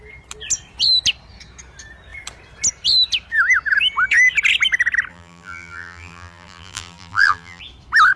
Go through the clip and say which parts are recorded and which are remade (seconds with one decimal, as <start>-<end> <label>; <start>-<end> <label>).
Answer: 0.0-5.1 recorded; 5.1-7.6 remade; 7.6-8.2 recorded